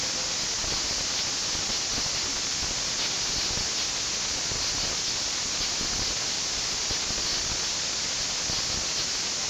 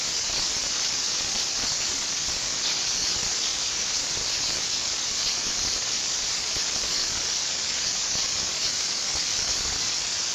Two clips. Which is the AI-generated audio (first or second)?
second